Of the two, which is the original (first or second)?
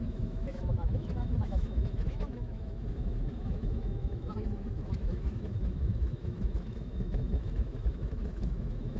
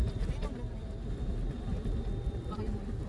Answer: second